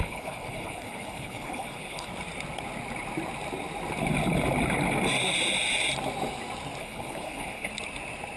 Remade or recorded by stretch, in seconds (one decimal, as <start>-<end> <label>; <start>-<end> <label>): 0.0-2.1 remade; 2.1-6.8 recorded; 6.8-7.7 remade; 7.7-8.4 recorded